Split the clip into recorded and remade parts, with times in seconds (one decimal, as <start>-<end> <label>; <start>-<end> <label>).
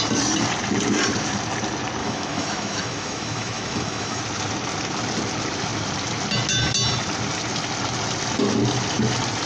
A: 0.0-2.0 recorded; 2.0-4.2 remade; 4.2-9.5 recorded